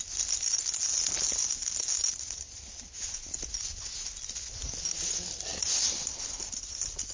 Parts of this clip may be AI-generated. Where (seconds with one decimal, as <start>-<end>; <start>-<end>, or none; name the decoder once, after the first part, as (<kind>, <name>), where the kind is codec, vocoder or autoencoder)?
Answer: none